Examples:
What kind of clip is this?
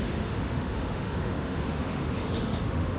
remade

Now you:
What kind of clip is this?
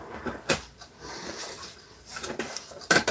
remade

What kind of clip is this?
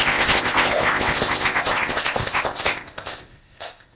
remade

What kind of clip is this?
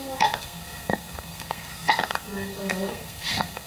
remade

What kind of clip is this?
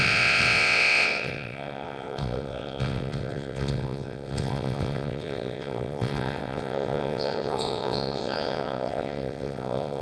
remade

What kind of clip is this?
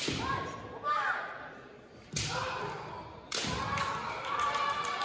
recorded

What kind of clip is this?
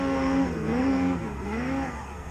remade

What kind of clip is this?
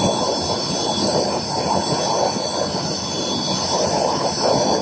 recorded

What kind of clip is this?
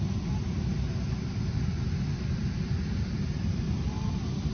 recorded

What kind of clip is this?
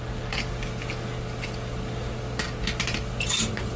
recorded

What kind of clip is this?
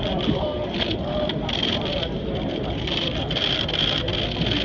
recorded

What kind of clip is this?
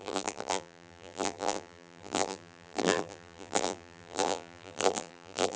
remade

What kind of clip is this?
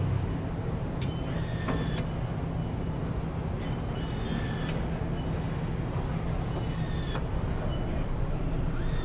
recorded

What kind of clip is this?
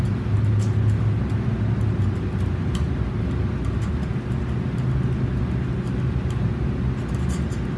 recorded